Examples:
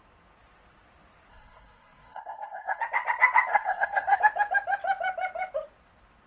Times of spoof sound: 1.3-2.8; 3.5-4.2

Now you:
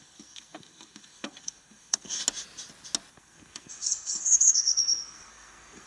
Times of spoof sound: 0.0-2.2; 3.1-5.9